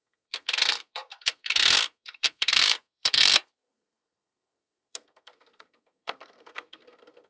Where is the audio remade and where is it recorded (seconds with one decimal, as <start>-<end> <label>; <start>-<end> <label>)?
0.0-7.3 remade